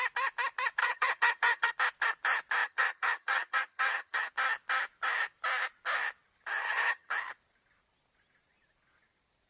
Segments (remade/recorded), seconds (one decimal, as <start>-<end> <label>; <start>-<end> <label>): 0.0-0.8 recorded; 0.8-1.7 remade; 1.7-2.6 recorded; 2.6-4.3 remade; 4.3-6.6 recorded; 6.6-7.1 remade; 7.1-9.5 recorded